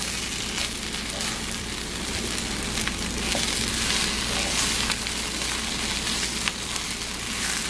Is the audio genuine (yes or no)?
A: yes